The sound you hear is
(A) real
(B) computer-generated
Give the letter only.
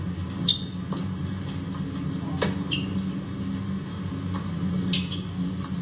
A